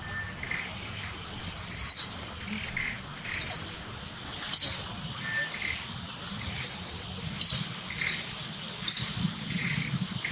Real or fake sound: real